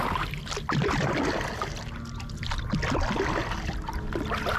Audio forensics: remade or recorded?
recorded